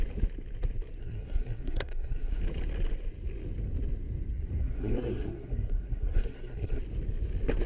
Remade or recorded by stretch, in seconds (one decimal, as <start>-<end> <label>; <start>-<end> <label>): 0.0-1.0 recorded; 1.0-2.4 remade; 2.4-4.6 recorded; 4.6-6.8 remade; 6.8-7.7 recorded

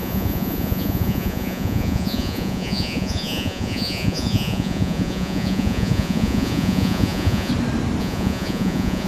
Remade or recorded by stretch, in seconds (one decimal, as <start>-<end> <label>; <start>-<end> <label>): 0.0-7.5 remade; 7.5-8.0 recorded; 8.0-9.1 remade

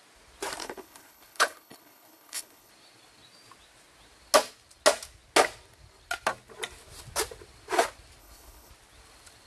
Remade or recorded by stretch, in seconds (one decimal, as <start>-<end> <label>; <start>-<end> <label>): 0.0-0.6 recorded; 0.6-2.7 remade; 2.7-8.2 recorded; 8.2-8.7 remade; 8.7-9.5 recorded